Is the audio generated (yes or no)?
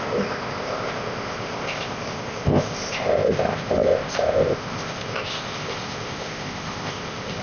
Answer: yes